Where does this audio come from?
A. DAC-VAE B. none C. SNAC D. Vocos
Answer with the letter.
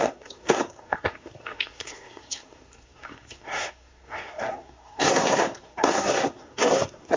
C